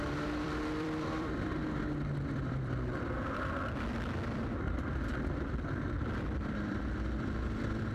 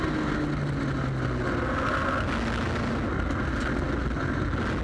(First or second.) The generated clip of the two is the first